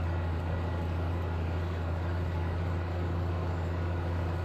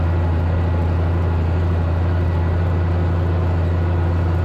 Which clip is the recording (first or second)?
second